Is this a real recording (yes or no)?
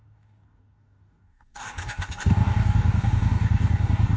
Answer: no